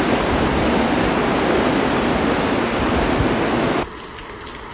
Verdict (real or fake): real